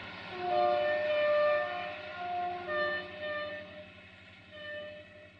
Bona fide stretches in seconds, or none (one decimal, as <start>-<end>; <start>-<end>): 0.0-5.4

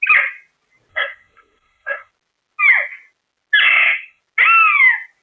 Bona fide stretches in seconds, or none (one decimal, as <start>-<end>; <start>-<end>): 0.0-0.9; 2.1-3.6; 4.2-5.2

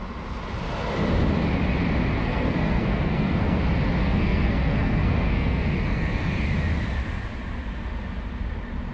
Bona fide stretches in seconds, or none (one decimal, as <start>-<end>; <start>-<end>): 0.0-2.2; 3.6-4.0; 6.4-8.9